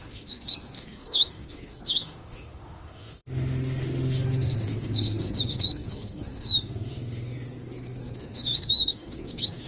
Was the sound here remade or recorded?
remade